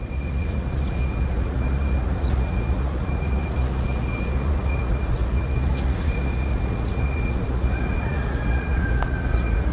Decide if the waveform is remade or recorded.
remade